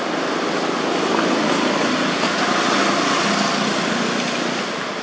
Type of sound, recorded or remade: recorded